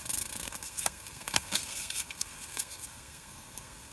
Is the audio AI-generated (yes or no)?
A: yes